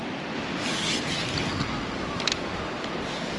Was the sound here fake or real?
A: real